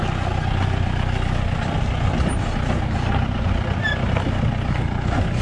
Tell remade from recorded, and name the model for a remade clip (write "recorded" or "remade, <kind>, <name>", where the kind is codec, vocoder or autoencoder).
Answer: recorded